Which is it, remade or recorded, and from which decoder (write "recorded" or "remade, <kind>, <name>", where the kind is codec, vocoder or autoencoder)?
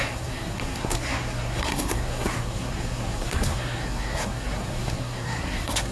remade, codec, SNAC